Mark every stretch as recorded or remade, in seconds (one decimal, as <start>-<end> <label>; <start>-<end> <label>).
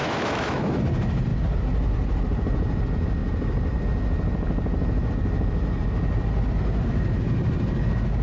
0.0-0.8 remade; 0.8-8.2 recorded